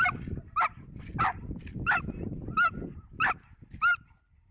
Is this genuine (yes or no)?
yes